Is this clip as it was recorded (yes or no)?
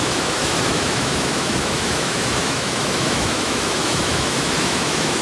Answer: no